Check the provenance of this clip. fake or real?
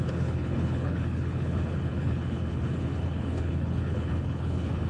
fake